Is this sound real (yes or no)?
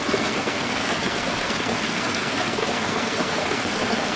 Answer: no